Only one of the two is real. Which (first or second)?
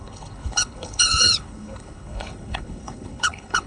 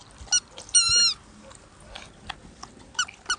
second